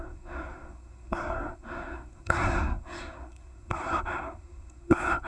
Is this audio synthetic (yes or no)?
yes